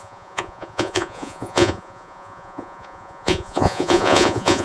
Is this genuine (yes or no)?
no